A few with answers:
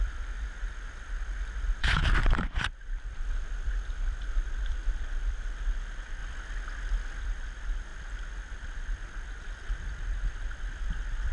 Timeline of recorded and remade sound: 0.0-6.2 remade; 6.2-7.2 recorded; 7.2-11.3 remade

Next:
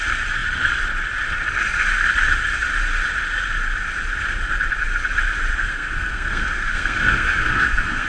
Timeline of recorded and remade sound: 0.0-5.5 recorded; 5.5-8.1 remade

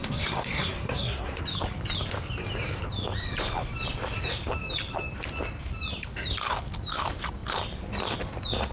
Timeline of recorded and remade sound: 0.0-1.4 remade; 1.4-8.7 recorded